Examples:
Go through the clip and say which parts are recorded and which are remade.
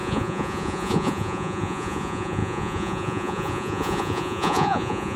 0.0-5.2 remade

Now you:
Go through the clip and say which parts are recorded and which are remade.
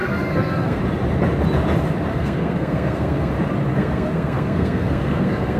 0.0-0.8 remade; 0.8-2.1 recorded; 2.1-3.3 remade; 3.3-3.7 recorded; 3.7-5.6 remade